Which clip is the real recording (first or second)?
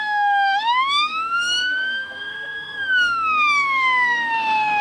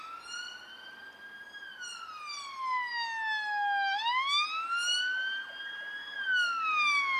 second